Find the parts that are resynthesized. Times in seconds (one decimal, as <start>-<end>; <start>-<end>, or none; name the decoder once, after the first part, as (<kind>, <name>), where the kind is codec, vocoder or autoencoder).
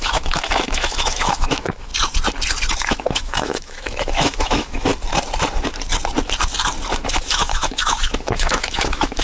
0.0-1.9 (autoencoder, DAC-VAE); 2.8-4.9; 7.1-9.2